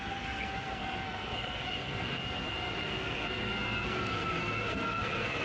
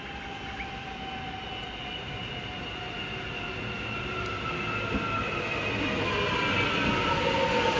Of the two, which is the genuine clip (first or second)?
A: second